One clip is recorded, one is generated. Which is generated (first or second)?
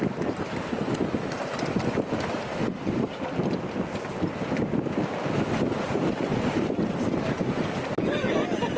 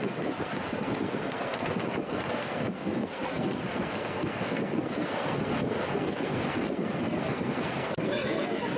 second